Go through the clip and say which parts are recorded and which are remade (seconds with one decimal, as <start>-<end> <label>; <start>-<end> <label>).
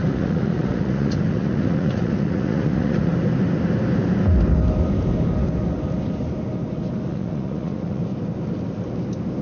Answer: 0.0-3.1 remade; 3.1-7.1 recorded; 7.1-8.0 remade; 8.0-9.4 recorded